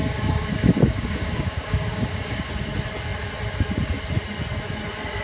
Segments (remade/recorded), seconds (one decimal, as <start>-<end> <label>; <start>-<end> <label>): 0.0-2.5 remade; 2.5-5.2 recorded